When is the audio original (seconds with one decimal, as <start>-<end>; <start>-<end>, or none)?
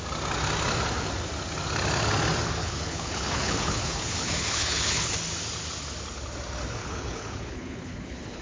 0.0-2.6; 5.1-6.8